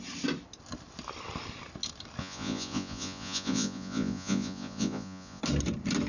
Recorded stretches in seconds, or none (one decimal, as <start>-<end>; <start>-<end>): 0.0-2.2; 5.4-6.1